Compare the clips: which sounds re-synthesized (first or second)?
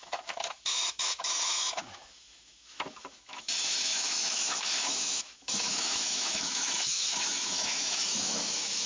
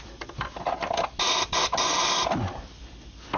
first